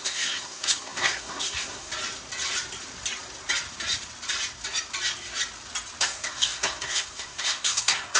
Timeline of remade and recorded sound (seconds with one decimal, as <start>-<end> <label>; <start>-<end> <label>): 0.0-1.9 remade; 1.9-6.0 recorded; 6.0-8.2 remade